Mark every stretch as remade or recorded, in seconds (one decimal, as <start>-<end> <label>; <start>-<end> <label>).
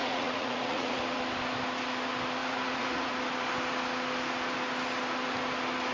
0.0-1.0 remade; 1.0-2.4 recorded; 2.4-3.1 remade; 3.1-5.9 recorded